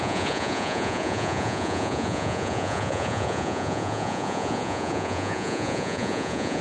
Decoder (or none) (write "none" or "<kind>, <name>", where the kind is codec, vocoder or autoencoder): vocoder, Vocos